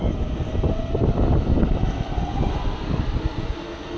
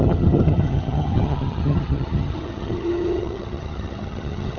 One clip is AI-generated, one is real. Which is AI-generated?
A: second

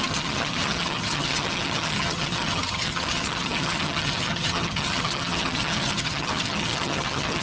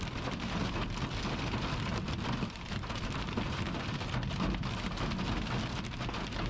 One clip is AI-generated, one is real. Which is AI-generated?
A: first